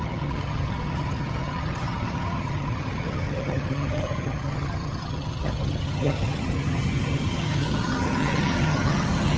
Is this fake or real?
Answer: fake